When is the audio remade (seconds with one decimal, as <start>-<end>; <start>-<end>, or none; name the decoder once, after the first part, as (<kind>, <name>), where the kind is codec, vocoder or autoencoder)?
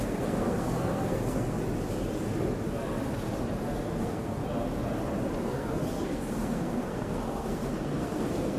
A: 0.0-1.6 (codec, SNAC); 4.0-4.4; 5.4-8.6